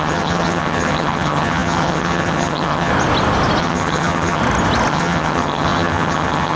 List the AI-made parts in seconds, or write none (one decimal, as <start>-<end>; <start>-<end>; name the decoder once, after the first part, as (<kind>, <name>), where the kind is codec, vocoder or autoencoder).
0.0-2.9 (vocoder, HiFi-GAN); 3.6-4.4; 4.9-6.6